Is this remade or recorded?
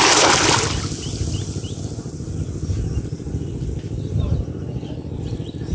recorded